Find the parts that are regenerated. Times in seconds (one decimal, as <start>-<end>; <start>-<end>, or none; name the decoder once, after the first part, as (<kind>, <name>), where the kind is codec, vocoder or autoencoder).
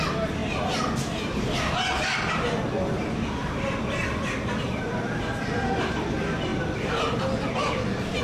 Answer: 0.0-0.4 (vocoder, BigVGAN v2); 5.3-8.2